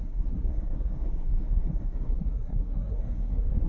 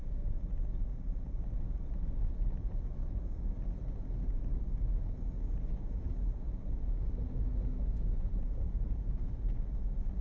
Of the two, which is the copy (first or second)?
first